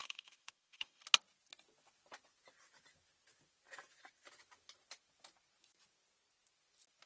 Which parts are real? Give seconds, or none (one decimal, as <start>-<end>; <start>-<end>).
1.0-7.1